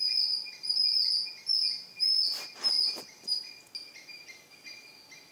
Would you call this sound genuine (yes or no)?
yes